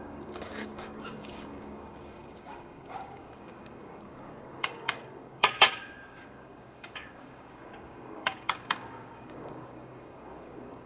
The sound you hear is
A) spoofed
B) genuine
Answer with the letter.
A